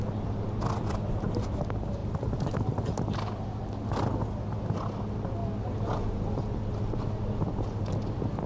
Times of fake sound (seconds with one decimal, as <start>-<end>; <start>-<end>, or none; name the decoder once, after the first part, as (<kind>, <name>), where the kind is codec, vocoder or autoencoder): none